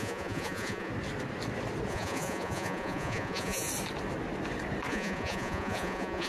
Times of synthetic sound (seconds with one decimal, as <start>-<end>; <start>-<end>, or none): 0.0-0.9; 1.9-3.7; 4.9-6.3